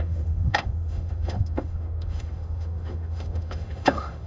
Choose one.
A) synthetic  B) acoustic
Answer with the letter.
A